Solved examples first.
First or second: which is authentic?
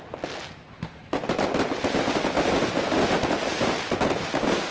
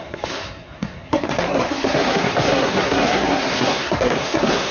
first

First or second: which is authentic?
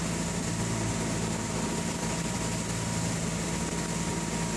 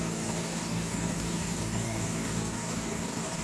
first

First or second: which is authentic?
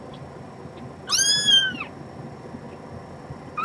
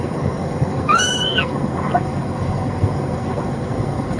first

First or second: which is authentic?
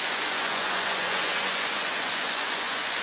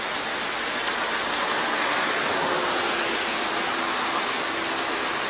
second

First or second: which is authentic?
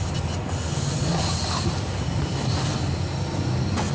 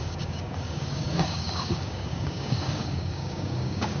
first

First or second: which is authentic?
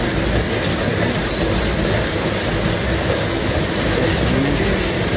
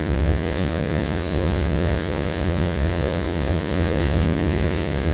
first